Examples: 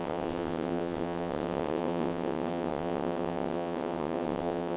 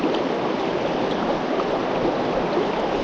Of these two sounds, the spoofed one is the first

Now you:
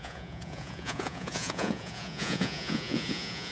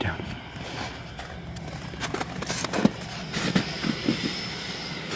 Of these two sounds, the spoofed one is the first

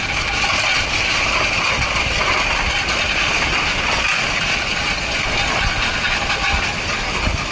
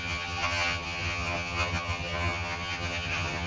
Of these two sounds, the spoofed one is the second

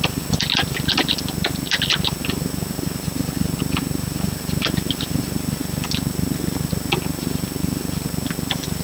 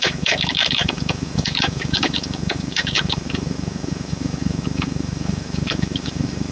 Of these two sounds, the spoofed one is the second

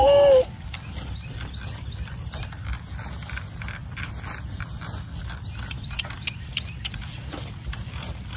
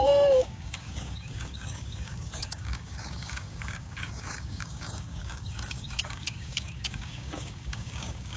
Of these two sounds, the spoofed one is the second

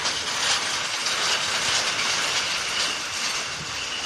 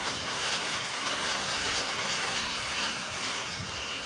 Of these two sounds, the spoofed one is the second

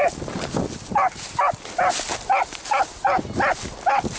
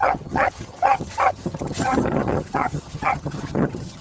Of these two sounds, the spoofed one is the second